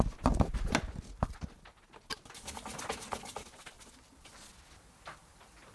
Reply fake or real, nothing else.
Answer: real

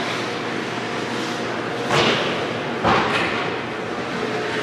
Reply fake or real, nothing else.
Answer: real